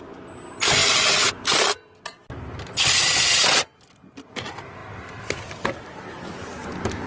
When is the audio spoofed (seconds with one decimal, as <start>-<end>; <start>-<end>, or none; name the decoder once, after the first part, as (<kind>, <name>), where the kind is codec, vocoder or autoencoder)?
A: none